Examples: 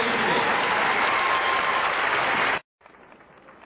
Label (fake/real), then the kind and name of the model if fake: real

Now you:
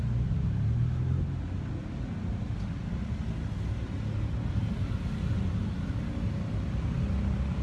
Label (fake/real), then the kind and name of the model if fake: real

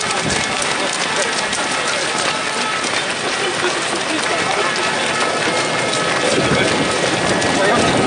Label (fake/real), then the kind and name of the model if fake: real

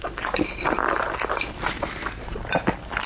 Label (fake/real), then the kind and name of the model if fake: real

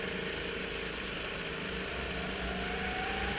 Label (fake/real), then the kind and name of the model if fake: real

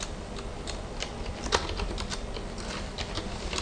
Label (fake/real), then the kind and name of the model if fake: real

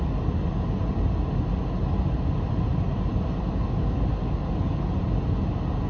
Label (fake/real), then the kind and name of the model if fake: real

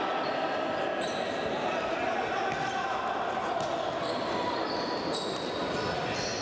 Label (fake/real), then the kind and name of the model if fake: real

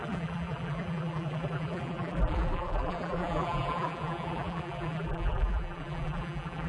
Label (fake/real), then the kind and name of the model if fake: fake, vocoder, BigVGAN v2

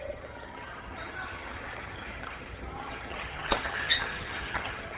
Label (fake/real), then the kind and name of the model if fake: fake, vocoder, HiFi-GAN